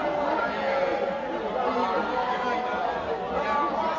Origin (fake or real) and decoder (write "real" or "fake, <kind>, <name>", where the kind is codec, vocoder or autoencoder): real